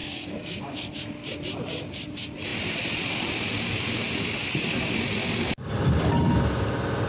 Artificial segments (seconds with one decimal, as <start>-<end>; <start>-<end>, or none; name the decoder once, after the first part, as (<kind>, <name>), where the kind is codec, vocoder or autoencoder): 0.0-0.9 (codec, DAC)